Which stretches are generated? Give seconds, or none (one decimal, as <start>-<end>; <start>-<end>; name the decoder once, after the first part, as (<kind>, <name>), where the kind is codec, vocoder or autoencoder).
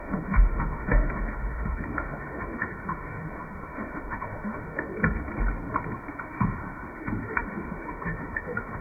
0.0-4.9 (autoencoder, DAC-VAE); 6.1-8.8